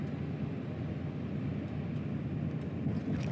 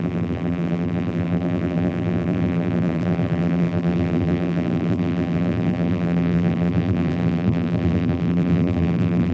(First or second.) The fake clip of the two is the second